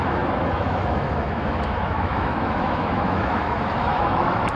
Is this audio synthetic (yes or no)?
yes